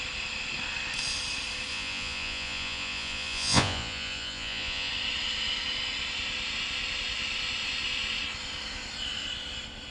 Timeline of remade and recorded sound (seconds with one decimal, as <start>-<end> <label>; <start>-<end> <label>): 0.0-1.7 recorded; 1.7-4.9 remade; 4.9-9.9 recorded